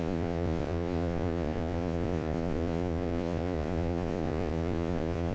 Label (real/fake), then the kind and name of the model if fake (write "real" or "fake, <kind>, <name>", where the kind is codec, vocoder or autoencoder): fake, vocoder, Vocos